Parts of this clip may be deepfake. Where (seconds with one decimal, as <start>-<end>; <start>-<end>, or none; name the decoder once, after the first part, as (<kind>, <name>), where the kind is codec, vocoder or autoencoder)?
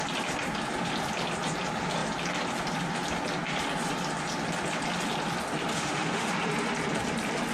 5.7-6.3 (autoencoder, DAC-VAE)